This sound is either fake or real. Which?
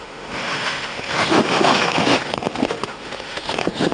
fake